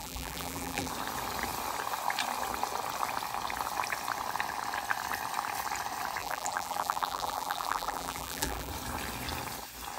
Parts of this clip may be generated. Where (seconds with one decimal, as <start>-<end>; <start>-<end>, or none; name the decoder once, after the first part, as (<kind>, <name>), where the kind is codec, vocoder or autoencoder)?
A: 0.0-0.9 (vocoder, BigVGAN v2); 6.2-8.7